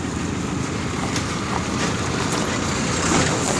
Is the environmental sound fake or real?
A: real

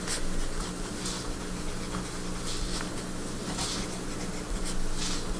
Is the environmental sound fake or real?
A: real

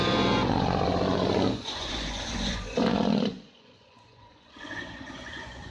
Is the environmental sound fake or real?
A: fake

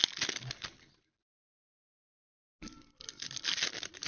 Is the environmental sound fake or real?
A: real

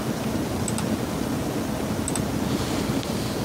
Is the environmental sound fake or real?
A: real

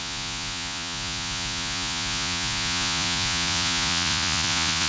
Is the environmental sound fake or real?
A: fake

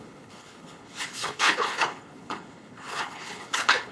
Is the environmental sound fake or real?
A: fake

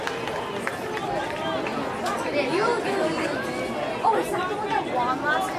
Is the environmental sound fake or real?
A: real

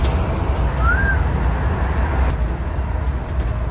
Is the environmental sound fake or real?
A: real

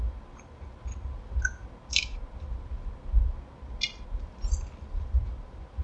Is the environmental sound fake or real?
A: real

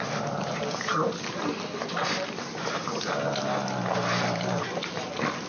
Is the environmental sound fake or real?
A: real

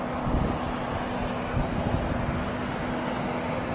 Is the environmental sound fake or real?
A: real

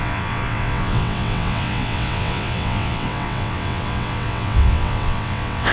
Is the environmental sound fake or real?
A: fake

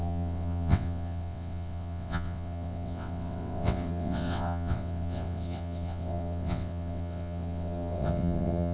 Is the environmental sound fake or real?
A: fake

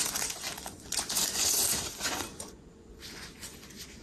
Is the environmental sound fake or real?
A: fake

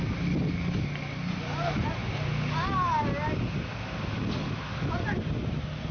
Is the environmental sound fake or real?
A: real